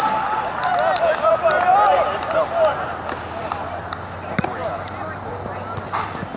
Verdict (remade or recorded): recorded